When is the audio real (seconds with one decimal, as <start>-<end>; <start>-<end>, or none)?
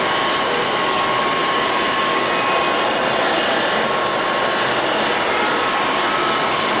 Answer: 0.0-1.4; 2.0-6.8